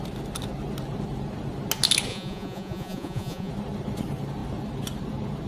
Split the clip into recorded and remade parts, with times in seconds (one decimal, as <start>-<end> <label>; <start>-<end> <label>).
0.0-2.1 recorded; 2.1-3.5 remade; 3.5-5.5 recorded